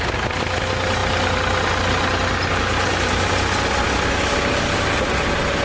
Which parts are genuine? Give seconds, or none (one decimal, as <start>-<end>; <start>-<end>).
0.0-5.6